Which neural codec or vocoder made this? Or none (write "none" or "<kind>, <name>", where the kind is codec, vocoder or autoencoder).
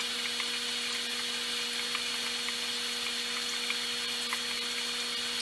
none